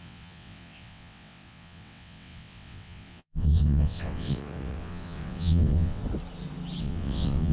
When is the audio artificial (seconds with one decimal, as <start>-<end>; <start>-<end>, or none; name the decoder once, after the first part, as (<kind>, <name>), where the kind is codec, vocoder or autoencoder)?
0.0-6.0 (vocoder, WaveNeXt); 6.8-7.5